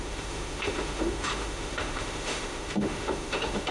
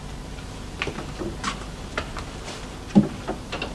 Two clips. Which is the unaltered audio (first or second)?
second